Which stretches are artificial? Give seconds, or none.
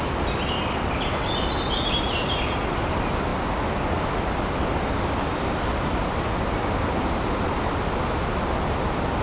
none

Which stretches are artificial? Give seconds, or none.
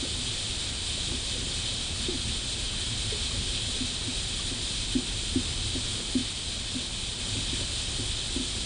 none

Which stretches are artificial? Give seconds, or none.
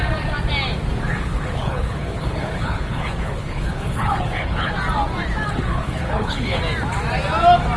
1.1-4.7 (codec, HILCodec); 5.5-6.6